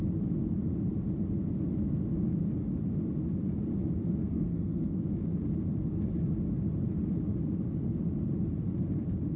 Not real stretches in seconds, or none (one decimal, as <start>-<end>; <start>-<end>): 4.2-5.0